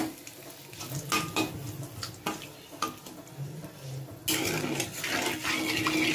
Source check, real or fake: real